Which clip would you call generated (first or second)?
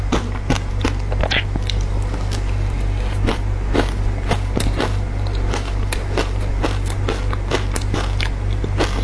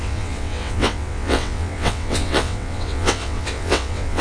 second